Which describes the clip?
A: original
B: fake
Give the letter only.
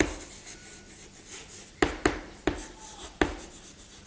A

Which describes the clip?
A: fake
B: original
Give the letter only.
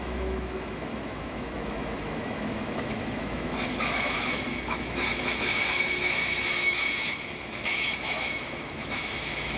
A